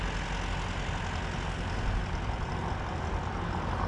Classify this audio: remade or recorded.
recorded